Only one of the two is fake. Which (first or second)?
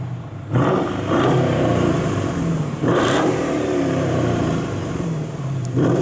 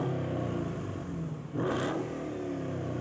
first